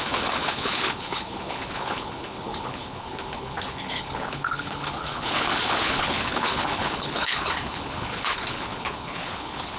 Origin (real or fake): fake